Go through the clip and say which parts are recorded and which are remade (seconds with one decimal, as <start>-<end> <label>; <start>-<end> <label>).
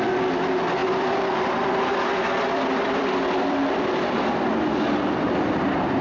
0.0-0.8 recorded; 0.8-4.1 remade; 4.1-6.0 recorded